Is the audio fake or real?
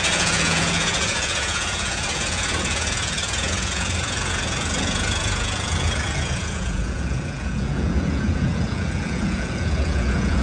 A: fake